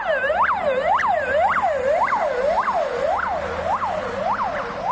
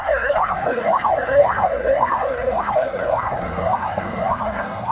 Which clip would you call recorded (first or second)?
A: first